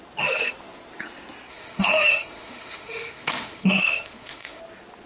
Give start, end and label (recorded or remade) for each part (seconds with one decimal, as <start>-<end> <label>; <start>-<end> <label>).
0.0-1.5 recorded; 1.5-4.6 remade; 4.6-5.1 recorded